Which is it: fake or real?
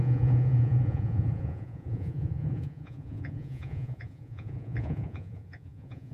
fake